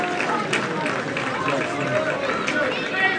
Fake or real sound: real